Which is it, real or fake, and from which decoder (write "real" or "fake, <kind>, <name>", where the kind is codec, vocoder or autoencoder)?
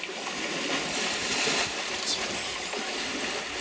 real